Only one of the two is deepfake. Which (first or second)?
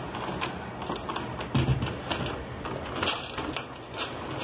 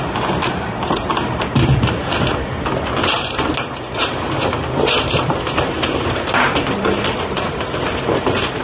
second